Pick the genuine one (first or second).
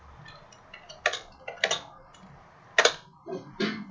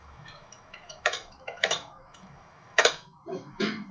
first